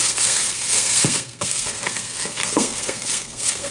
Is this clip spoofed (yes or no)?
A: yes